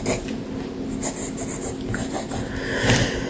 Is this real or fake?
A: real